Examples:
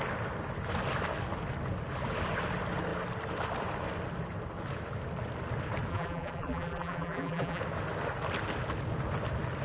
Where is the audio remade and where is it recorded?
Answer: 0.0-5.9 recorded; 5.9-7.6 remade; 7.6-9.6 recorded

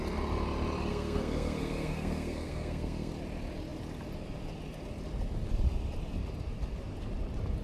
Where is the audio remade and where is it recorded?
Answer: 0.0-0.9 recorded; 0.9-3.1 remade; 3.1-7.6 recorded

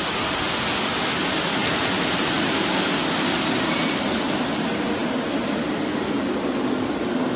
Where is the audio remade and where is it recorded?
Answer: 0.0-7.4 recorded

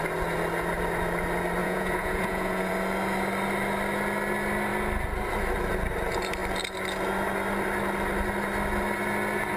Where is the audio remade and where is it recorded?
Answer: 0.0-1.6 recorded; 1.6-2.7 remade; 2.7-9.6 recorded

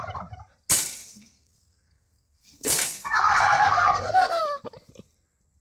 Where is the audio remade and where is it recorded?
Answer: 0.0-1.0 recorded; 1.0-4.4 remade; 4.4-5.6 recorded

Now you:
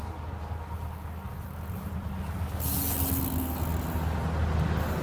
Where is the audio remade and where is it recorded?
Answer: 0.0-1.3 recorded; 1.3-2.1 remade; 2.1-5.0 recorded